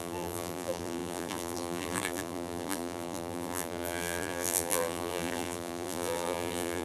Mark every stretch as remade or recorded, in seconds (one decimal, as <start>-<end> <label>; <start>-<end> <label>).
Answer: 0.0-6.8 remade